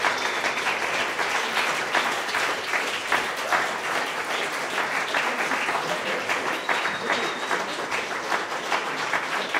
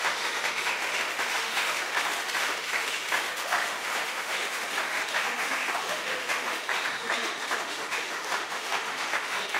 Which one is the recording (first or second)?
first